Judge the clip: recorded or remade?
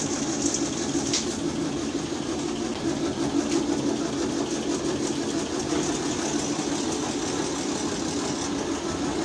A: recorded